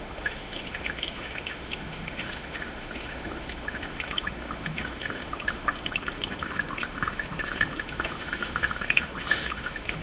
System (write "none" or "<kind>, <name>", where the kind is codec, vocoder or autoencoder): autoencoder, DAC-VAE